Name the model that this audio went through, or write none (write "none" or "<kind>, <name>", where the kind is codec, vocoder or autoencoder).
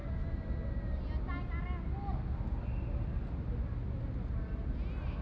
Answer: none